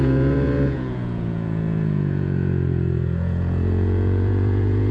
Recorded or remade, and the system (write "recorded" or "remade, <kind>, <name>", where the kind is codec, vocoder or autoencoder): remade, vocoder, Vocos